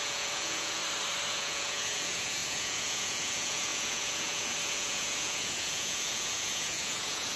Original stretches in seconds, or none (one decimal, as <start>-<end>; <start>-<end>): 0.8-1.3